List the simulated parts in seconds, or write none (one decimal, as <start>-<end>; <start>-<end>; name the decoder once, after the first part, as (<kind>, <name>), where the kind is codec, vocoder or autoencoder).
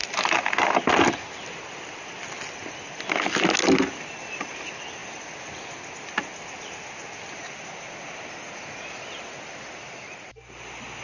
none